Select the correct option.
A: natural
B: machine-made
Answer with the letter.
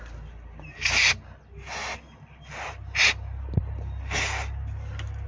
A